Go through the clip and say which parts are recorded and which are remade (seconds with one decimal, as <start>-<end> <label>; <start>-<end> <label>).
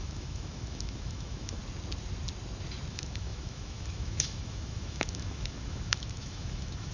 0.0-1.6 remade; 1.6-2.9 recorded; 2.9-6.9 remade